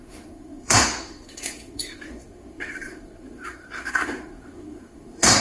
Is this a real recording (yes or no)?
no